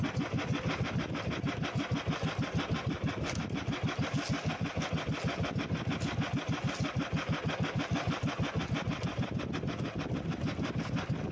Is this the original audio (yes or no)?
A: yes